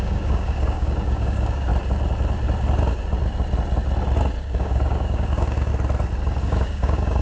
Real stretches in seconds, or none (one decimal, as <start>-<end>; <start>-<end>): 1.7-4.4; 5.7-6.4

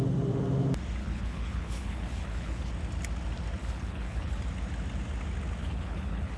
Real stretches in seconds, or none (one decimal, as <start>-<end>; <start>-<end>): 0.0-1.0; 2.7-3.6; 4.4-5.6

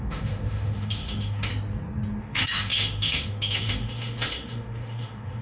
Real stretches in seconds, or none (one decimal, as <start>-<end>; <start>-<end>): 1.5-2.2

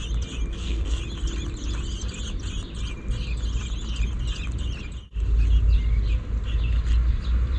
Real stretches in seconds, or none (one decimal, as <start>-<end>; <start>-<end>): 0.0-0.5; 1.0-7.6

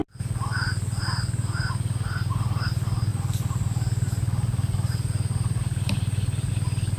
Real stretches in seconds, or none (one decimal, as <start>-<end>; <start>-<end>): 0.0-7.0

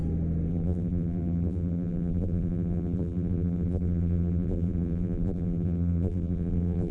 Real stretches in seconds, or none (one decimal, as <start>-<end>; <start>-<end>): 0.0-0.5